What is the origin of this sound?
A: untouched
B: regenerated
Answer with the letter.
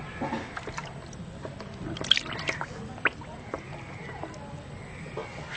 A